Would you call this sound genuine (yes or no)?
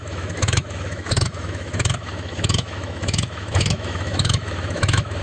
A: no